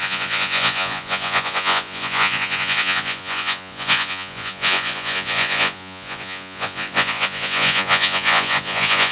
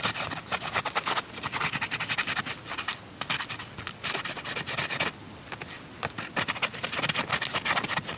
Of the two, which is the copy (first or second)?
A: first